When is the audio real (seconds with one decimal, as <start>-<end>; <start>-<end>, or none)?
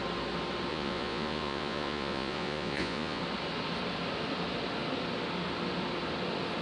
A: 0.0-0.7; 3.2-6.6